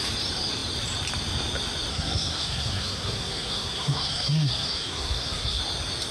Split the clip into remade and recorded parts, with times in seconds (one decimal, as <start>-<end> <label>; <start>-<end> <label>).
0.0-1.9 recorded; 1.9-5.6 remade; 5.6-6.1 recorded